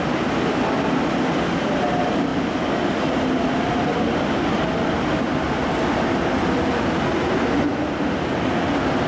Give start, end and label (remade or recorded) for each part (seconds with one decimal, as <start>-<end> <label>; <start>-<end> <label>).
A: 0.0-9.1 recorded

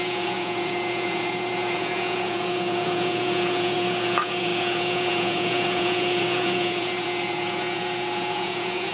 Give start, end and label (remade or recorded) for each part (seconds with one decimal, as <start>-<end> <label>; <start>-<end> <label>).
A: 0.0-8.9 remade

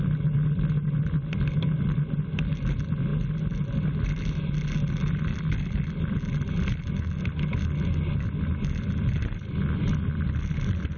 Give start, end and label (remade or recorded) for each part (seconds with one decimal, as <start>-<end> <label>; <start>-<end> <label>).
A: 0.0-11.0 recorded